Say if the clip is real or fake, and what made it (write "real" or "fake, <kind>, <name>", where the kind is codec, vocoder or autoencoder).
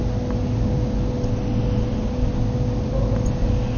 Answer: real